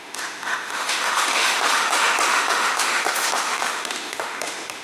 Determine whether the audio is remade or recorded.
remade